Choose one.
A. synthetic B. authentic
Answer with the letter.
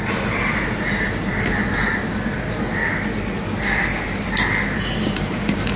B